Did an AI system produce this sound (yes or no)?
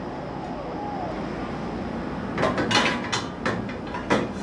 no